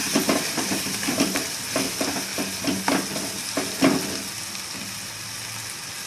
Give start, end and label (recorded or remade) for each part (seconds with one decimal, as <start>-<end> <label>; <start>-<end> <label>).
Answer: 0.0-1.5 remade; 1.5-6.1 recorded